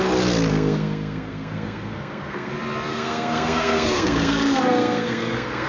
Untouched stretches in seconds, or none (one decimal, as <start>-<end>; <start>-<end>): 0.0-0.5; 2.5-2.9